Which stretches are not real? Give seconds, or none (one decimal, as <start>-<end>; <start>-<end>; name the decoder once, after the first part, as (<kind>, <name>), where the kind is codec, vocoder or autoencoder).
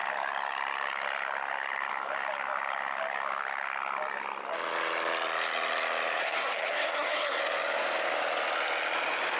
6.2-7.4 (codec, SNAC)